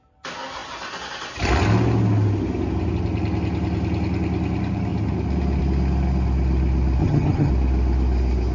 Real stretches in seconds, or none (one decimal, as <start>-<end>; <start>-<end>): 0.0-7.0; 7.5-8.5